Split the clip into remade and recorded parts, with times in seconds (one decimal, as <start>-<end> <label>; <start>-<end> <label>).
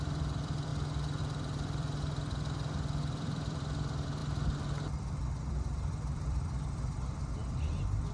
0.0-0.7 remade; 0.7-1.2 recorded; 1.2-4.2 remade; 4.2-4.7 recorded; 4.7-8.1 remade